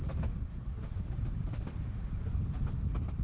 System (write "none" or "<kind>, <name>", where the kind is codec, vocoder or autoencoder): none